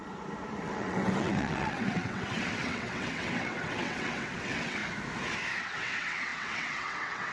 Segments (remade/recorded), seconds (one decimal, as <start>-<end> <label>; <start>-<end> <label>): 0.0-0.6 recorded; 0.6-4.8 remade; 4.8-5.6 recorded; 5.6-7.3 remade